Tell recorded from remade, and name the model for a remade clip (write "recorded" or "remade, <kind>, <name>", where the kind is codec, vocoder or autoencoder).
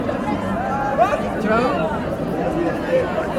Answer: recorded